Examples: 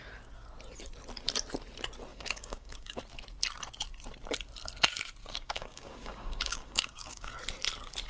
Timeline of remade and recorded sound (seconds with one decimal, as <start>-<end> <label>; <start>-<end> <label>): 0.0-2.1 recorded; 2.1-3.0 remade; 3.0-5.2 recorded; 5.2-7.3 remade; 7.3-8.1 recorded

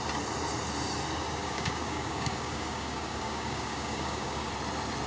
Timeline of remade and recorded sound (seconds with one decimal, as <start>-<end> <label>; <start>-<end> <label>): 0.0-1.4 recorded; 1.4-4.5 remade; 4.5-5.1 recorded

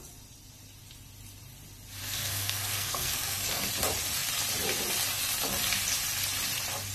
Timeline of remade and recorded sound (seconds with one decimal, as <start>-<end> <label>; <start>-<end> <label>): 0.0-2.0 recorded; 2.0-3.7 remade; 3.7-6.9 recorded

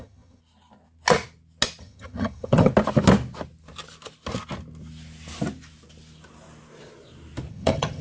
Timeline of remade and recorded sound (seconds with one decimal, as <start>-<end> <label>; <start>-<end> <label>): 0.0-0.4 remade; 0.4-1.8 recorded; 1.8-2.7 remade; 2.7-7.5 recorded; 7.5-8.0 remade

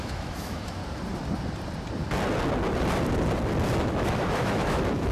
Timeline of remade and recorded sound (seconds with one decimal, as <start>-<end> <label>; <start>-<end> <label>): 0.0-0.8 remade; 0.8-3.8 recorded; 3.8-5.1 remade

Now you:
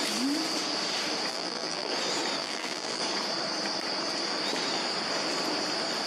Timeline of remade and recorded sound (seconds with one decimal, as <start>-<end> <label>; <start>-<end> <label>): 0.0-1.3 recorded; 1.3-1.9 remade; 1.9-2.4 recorded; 2.4-3.0 remade; 3.0-6.1 recorded

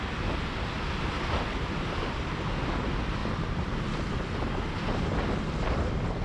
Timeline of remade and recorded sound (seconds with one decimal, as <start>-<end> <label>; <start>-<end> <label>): 0.0-6.2 recorded

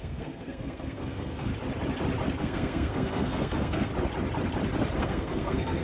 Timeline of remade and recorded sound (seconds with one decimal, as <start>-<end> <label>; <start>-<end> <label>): 0.0-1.5 remade; 1.5-2.4 recorded; 2.4-3.9 remade; 3.9-5.0 recorded; 5.0-5.8 remade